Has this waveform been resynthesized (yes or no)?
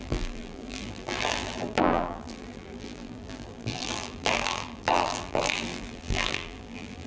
yes